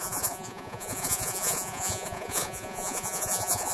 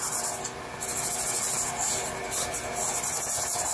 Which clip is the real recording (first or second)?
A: second